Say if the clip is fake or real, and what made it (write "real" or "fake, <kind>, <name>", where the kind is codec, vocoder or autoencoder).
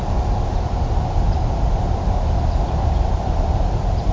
real